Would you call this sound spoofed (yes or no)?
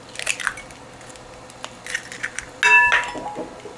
no